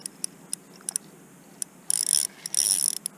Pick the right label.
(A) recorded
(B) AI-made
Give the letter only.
A